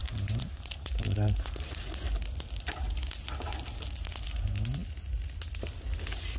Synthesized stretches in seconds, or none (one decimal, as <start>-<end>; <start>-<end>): 0.0-1.8